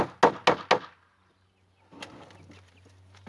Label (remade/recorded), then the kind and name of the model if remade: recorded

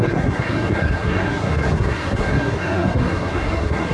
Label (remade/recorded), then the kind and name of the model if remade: remade, codec, SNAC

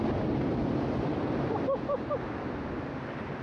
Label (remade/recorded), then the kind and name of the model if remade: recorded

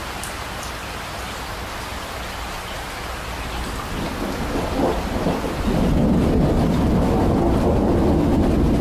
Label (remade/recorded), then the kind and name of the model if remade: recorded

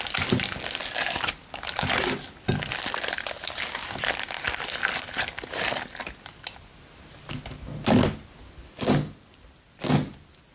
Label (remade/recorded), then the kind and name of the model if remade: recorded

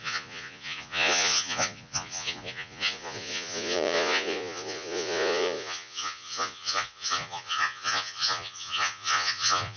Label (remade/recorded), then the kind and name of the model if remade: remade, vocoder, Vocos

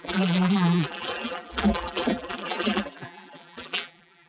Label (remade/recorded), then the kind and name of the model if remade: remade, vocoder, BigVGAN v2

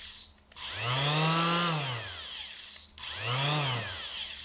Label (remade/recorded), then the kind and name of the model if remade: recorded